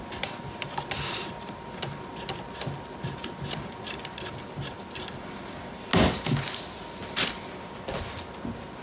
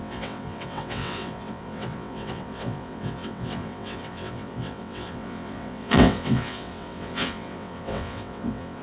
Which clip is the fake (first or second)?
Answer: second